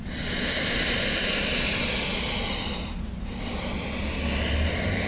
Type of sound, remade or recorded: recorded